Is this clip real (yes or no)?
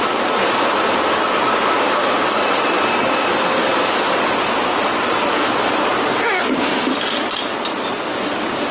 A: yes